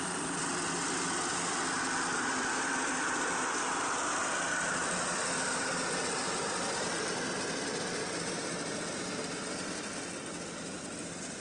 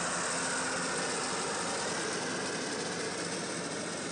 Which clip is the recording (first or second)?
second